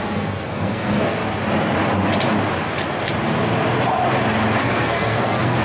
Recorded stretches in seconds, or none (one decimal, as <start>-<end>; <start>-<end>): 1.2-4.6